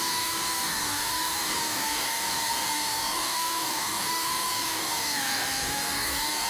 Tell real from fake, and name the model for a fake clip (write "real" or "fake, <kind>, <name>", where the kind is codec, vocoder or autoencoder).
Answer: fake, codec, DAC